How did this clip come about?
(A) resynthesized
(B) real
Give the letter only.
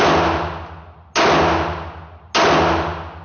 B